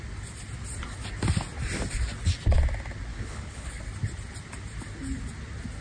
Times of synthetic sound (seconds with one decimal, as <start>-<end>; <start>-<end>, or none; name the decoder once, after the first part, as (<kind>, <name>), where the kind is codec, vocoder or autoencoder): 3.1-3.8 (codec, HILCodec)